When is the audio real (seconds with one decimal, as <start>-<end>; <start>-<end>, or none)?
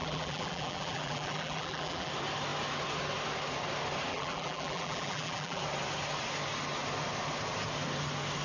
2.1-4.1; 5.6-8.4